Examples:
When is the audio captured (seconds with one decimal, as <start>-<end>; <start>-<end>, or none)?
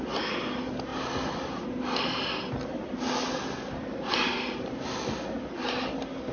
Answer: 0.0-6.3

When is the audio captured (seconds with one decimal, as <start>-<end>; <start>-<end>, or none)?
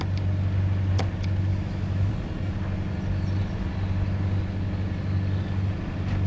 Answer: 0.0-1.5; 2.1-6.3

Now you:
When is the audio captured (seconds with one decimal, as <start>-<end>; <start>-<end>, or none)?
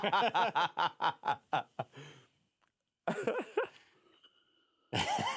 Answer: 0.0-3.0; 3.6-5.4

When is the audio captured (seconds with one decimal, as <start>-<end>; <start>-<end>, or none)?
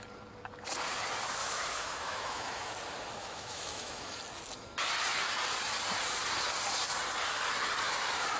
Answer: 0.0-1.4; 2.7-3.2; 4.2-8.4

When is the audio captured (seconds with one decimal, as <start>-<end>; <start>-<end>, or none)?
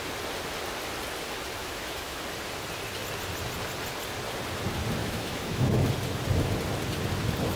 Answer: 0.0-1.6; 2.2-5.0; 5.9-7.6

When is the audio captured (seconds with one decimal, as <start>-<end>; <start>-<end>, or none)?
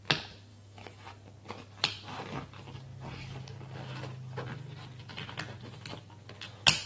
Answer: 0.0-0.5; 1.1-6.9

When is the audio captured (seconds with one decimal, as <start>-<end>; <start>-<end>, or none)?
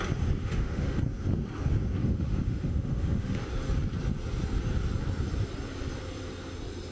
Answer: 0.0-0.4; 1.0-2.0; 3.5-6.9